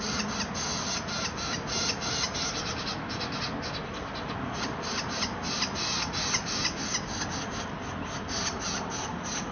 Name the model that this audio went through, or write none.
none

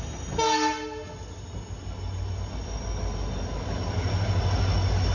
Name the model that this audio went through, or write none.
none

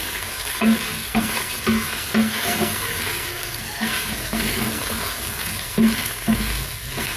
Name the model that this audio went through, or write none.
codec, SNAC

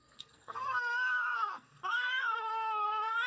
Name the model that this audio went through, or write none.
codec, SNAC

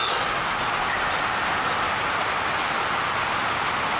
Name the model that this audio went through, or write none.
none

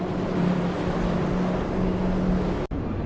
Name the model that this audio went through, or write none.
none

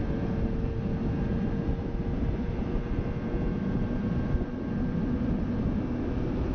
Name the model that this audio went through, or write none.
none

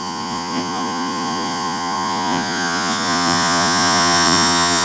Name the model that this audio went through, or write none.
vocoder, Vocos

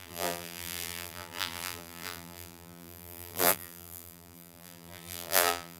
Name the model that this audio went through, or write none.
vocoder, BigVGAN v2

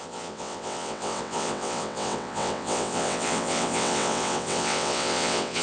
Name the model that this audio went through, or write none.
vocoder, WaveNeXt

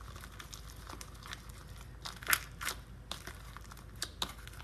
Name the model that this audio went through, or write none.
none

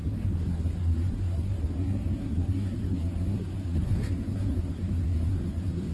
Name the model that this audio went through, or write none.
codec, SNAC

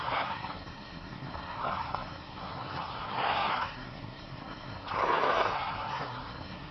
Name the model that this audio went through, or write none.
codec, SNAC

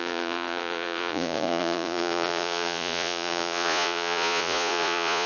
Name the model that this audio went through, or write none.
vocoder, Vocos